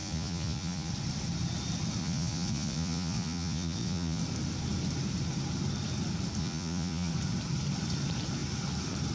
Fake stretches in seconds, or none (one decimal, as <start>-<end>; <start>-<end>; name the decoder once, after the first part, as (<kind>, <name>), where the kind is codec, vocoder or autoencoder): 0.0-0.9 (vocoder, Vocos); 2.0-4.2; 6.4-7.1